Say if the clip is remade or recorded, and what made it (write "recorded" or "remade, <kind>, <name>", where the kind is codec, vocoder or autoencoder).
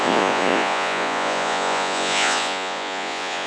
remade, vocoder, Vocos